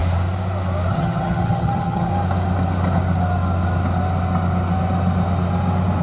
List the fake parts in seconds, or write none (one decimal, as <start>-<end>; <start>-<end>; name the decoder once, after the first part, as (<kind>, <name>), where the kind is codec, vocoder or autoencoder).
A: 0.9-2.1 (vocoder, HiFi-GAN)